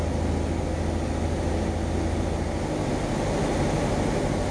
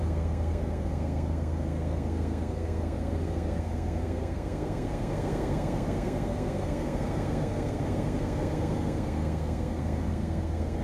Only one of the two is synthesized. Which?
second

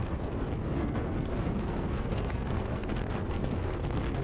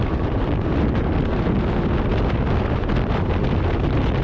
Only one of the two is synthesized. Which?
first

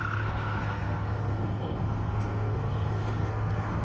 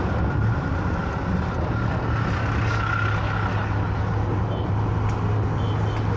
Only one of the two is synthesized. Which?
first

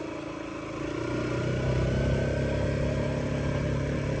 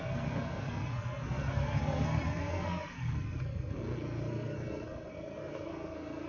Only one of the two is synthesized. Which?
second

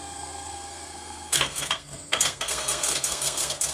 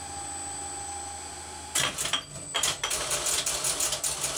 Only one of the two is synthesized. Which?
first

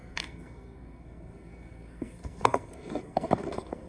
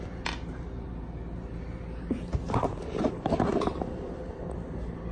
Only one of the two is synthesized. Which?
first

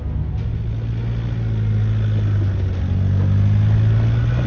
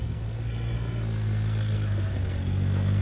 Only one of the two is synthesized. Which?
second